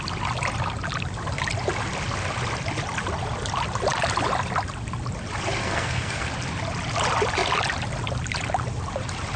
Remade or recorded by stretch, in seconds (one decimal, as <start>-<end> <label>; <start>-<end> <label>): 0.0-5.6 recorded; 5.6-6.3 remade; 6.3-9.4 recorded